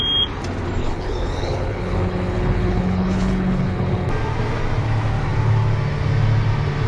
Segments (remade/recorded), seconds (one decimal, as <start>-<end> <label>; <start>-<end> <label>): 0.0-0.8 recorded; 0.8-4.1 remade; 4.1-6.9 recorded